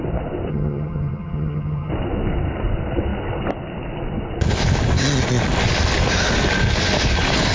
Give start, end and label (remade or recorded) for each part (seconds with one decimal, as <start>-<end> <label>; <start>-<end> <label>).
0.0-0.5 recorded; 0.5-1.9 remade; 1.9-7.5 recorded